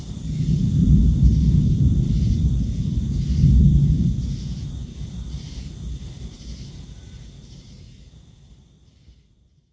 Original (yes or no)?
no